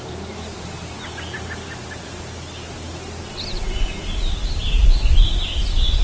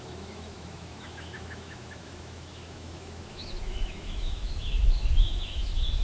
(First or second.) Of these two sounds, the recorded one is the first